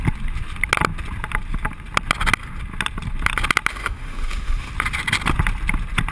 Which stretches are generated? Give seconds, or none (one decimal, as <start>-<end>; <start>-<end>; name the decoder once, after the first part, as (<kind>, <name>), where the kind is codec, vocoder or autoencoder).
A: 3.7-4.7 (autoencoder, DAC-VAE)